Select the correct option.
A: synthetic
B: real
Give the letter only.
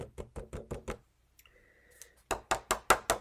B